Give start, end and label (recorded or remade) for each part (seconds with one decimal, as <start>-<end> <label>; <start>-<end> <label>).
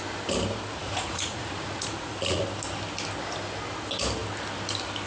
0.0-0.8 recorded; 0.8-2.4 remade; 2.4-5.1 recorded